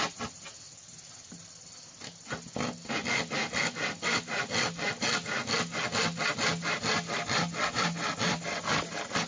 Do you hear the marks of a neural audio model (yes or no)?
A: no